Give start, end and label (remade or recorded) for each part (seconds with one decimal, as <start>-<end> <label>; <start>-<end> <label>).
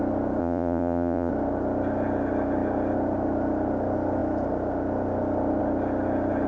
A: 0.0-0.4 recorded; 0.4-1.3 remade; 1.3-6.5 recorded